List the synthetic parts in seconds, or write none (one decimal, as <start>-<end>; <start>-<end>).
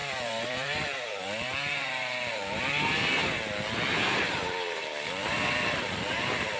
0.0-3.2; 4.1-6.6